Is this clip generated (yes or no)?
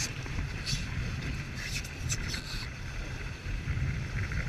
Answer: no